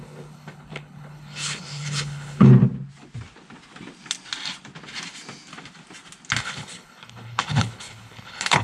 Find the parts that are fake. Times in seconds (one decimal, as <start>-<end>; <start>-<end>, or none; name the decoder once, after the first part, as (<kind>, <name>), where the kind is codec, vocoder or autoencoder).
0.0-2.5 (codec, HILCodec); 6.4-8.6